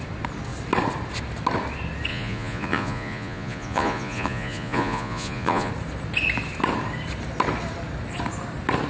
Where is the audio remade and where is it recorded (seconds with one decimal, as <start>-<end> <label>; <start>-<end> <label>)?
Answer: 0.0-2.1 recorded; 2.1-5.7 remade; 5.7-8.9 recorded